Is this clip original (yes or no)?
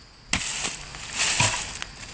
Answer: yes